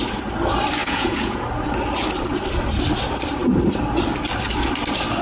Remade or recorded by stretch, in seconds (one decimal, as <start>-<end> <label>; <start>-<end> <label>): 0.0-0.8 recorded; 0.8-1.4 remade; 1.4-5.2 recorded

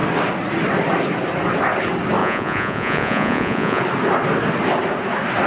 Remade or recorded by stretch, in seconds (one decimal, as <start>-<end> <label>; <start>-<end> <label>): 0.0-2.2 recorded; 2.2-3.8 remade; 3.8-5.5 recorded